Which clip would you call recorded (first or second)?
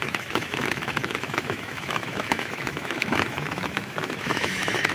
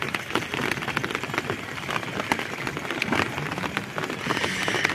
second